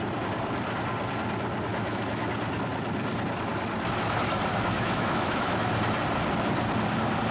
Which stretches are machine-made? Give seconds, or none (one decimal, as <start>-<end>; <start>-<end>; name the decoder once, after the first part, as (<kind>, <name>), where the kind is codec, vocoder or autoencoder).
1.7-2.3 (autoencoder, DAC-VAE); 4.5-5.7